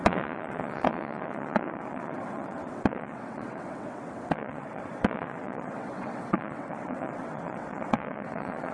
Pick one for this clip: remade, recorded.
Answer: remade